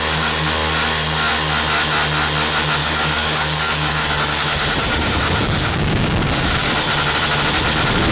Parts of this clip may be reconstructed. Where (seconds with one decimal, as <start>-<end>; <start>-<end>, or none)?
2.8-6.7

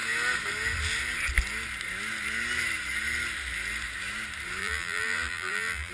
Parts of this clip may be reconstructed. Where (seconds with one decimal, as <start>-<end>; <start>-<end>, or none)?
4.6-5.9

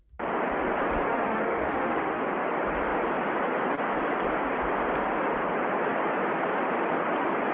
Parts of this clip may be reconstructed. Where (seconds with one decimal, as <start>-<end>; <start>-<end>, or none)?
1.1-2.2

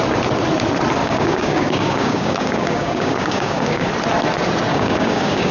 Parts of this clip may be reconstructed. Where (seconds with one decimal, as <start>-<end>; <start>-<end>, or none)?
1.0-3.9; 4.7-5.5

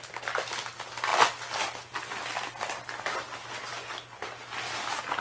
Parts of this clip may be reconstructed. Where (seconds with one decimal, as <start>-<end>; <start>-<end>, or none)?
none

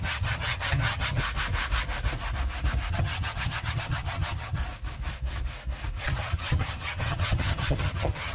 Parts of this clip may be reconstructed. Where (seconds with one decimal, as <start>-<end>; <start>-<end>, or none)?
0.0-1.2; 2.9-4.6; 6.0-8.3